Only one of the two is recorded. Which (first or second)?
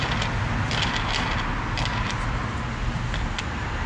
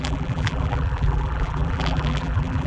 first